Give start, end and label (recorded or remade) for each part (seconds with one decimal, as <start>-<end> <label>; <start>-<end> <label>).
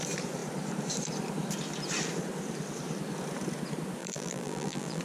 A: 0.0-4.0 recorded; 4.0-5.0 remade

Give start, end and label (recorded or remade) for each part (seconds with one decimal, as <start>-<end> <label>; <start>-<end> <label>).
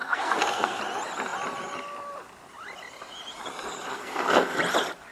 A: 0.0-0.8 remade; 0.8-3.9 recorded; 3.9-4.6 remade; 4.6-5.1 recorded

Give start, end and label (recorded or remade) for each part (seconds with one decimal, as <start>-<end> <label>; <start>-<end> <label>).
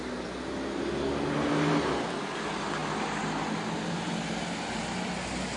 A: 0.0-5.6 recorded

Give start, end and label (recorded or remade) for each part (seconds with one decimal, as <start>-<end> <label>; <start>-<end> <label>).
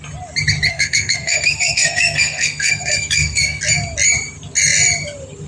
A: 0.0-0.7 recorded; 0.7-3.6 remade; 3.6-5.5 recorded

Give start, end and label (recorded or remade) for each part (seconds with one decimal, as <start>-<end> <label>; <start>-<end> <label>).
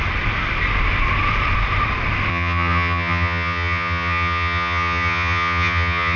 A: 0.0-2.3 recorded; 2.3-6.2 remade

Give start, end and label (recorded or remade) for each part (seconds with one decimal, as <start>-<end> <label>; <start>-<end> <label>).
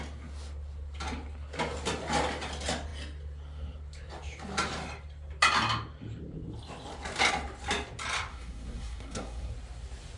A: 0.0-8.3 recorded; 8.3-9.5 remade; 9.5-10.2 recorded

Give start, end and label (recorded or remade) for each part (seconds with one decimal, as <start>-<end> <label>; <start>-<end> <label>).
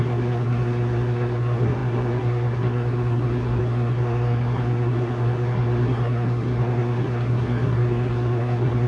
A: 0.0-8.9 remade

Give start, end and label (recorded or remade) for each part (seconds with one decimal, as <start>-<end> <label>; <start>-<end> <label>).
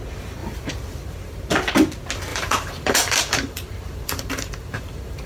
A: 0.0-0.4 recorded; 0.4-1.5 remade; 1.5-2.3 recorded; 2.3-5.3 remade